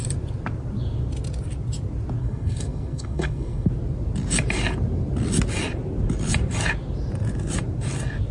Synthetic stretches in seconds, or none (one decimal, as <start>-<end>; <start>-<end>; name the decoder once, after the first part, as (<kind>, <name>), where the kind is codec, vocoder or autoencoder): 2.2-3.7 (codec, SNAC)